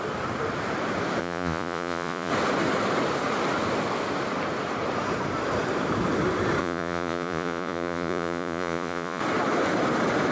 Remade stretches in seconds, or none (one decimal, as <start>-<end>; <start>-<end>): 1.2-2.3; 6.6-9.2